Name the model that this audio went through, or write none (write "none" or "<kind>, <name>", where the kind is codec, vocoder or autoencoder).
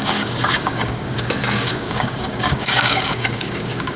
codec, DAC